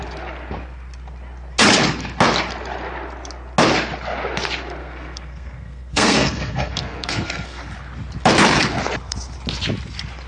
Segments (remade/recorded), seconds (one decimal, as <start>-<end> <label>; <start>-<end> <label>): 0.0-4.8 recorded; 4.8-7.6 remade; 7.6-10.3 recorded